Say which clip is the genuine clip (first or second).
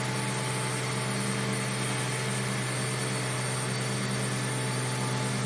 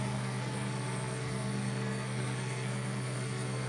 first